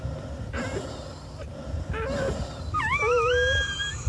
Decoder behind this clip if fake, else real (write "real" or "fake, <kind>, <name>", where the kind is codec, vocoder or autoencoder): real